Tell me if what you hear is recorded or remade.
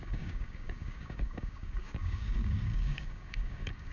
remade